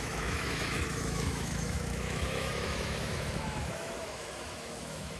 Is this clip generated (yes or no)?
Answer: yes